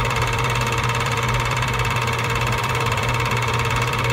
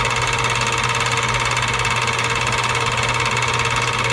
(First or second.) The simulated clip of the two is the first